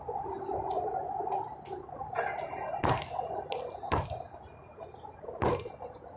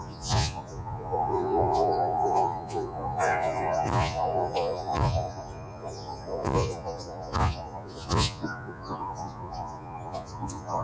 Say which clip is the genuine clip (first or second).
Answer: first